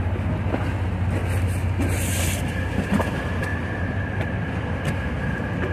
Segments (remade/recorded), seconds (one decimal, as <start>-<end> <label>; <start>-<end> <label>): 0.0-5.7 recorded